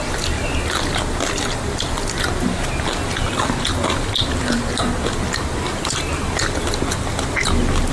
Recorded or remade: recorded